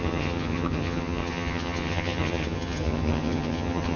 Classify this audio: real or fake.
fake